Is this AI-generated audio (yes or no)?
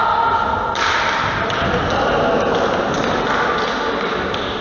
no